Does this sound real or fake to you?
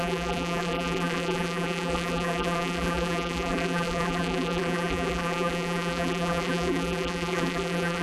fake